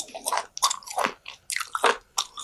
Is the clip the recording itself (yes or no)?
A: yes